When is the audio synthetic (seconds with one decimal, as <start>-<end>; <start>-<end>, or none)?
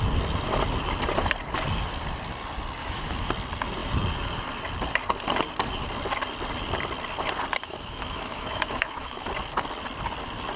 2.8-3.3; 7.6-9.3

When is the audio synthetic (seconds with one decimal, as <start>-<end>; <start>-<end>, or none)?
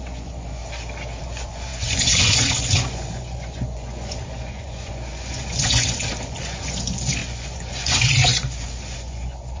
0.0-0.6; 1.2-9.6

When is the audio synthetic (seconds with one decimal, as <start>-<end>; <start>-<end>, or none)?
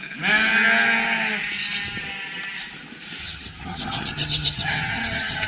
3.2-5.5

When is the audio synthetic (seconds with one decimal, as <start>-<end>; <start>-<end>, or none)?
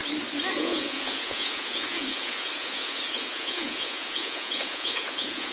0.6-5.5